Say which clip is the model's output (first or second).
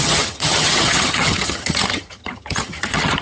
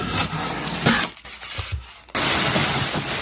first